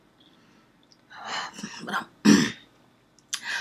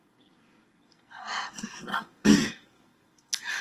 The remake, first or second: second